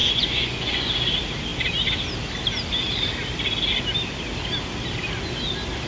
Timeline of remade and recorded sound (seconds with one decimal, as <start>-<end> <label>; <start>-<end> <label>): 0.0-0.9 remade; 0.9-5.9 recorded